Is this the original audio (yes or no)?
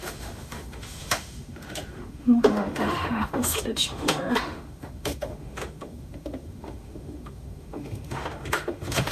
no